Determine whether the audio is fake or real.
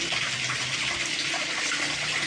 real